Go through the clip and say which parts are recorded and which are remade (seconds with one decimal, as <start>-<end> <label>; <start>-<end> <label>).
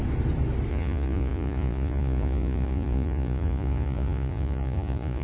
0.0-0.7 recorded; 0.7-5.2 remade